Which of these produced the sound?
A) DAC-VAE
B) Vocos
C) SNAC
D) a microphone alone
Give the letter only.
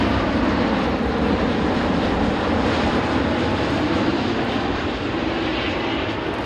D